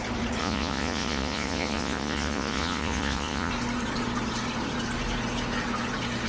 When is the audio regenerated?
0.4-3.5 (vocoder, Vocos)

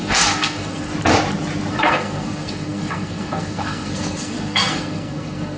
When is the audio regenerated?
0.0-0.9 (codec, SNAC); 1.7-5.6

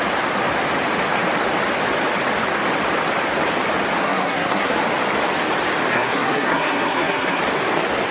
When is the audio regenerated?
4.0-4.8 (codec, SNAC); 5.9-7.4

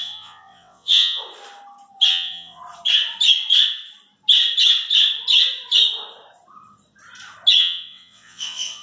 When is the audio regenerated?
0.0-1.2 (vocoder, WaveNeXt); 2.1-2.6; 7.6-8.8

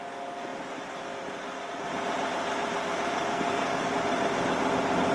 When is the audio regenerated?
3.3-3.9 (codec, SNAC)